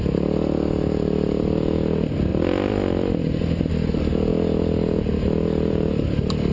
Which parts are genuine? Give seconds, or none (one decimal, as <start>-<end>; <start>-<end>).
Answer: 0.0-6.5